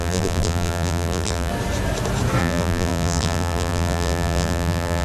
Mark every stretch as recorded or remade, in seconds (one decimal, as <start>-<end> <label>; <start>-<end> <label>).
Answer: 0.0-1.5 remade; 1.5-2.4 recorded; 2.4-5.0 remade